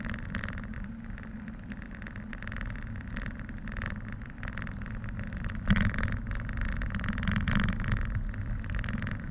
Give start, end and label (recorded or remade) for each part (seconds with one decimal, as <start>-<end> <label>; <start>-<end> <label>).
0.0-9.3 recorded